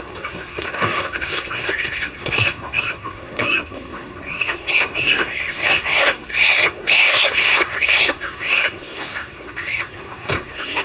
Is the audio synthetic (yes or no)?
yes